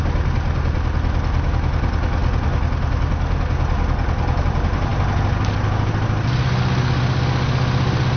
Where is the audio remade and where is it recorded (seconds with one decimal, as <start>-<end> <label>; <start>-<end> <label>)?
0.0-8.2 recorded